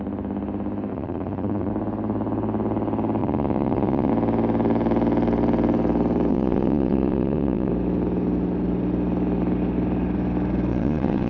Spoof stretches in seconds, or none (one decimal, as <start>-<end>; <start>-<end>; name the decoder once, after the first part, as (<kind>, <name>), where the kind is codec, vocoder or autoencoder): 0.9-1.7 (vocoder, Vocos); 3.2-4.1; 6.3-7.7; 10.7-11.3